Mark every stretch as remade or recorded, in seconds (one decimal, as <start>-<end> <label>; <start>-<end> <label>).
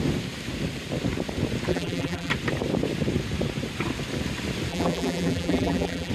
0.0-1.7 recorded; 1.7-2.3 remade; 2.3-4.7 recorded; 4.7-6.1 remade